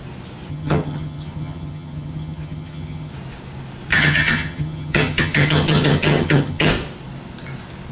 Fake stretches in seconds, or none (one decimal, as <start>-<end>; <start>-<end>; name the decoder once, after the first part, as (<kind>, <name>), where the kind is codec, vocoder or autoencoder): 0.5-3.1 (vocoder, HiFi-GAN); 3.9-6.7

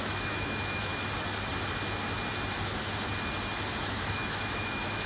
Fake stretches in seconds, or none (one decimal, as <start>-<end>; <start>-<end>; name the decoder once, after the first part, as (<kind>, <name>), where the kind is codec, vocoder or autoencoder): 0.0-0.9 (autoencoder, DAC-VAE); 3.8-5.1

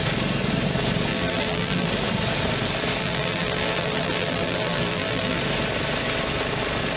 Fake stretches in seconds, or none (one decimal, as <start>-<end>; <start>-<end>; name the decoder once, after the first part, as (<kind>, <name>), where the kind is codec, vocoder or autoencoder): 1.1-1.9 (vocoder, BigVGAN v2); 3.0-5.4

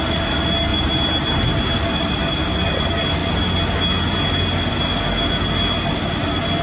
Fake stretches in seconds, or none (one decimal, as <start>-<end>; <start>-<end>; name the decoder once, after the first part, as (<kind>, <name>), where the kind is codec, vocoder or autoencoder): none

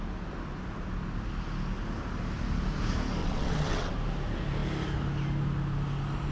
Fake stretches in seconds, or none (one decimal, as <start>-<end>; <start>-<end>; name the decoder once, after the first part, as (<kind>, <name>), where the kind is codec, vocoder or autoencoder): 3.2-3.9 (vocoder, WaveNeXt)

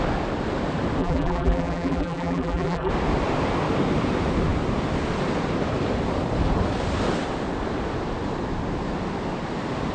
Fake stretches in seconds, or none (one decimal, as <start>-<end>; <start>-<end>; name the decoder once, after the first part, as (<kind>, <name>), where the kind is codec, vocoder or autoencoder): 1.0-2.9 (vocoder, BigVGAN v2)

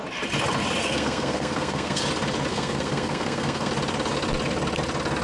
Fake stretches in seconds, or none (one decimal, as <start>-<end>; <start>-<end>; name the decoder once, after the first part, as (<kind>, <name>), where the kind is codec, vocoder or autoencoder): 0.8-2.0 (codec, SNAC); 2.5-3.7